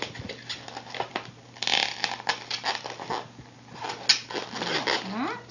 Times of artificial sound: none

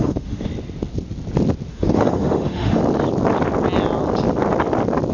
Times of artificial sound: 0.0-0.5 (autoencoder, DAC-VAE); 1.7-2.8

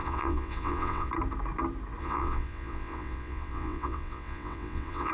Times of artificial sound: 0.0-1.1 (vocoder, WaveNeXt); 2.0-5.1